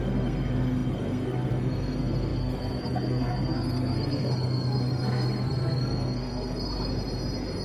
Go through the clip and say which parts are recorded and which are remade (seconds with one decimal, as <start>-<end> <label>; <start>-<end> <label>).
0.0-6.7 remade; 6.7-7.6 recorded